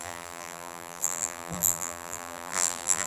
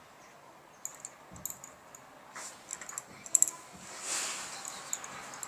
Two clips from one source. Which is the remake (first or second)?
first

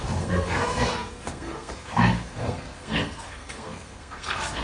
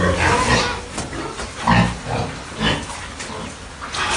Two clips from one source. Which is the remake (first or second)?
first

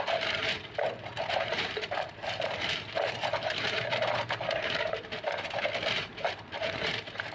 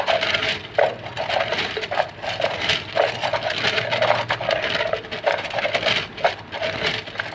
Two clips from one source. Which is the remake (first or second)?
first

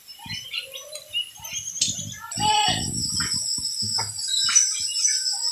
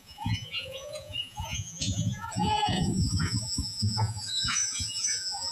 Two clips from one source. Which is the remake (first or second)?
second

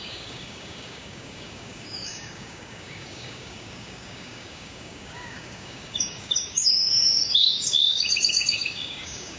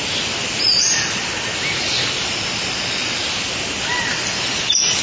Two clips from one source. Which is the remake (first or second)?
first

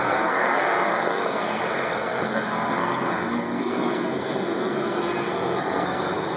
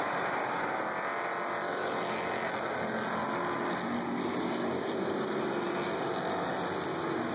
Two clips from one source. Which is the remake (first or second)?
first